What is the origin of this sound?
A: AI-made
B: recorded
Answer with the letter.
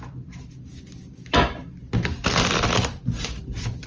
B